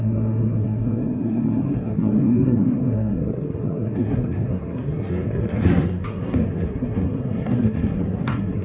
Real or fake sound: fake